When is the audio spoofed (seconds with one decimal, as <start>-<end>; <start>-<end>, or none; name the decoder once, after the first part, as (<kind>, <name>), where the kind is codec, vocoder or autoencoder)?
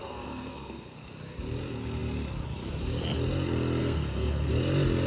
0.0-1.1 (codec, SNAC); 3.8-4.5